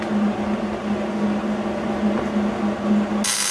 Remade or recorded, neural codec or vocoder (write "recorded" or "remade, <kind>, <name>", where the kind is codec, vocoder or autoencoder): recorded